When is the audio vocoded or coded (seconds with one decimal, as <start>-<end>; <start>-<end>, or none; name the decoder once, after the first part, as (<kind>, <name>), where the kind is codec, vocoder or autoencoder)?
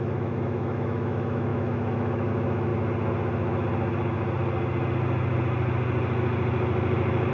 0.0-2.7 (autoencoder, DAC-VAE)